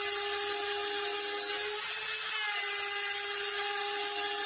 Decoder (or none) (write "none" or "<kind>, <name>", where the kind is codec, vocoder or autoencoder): none